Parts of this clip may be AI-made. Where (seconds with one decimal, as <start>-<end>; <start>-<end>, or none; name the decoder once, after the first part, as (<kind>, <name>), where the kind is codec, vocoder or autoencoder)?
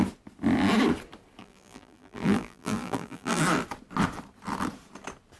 1.4-3.4 (vocoder, BigVGAN v2)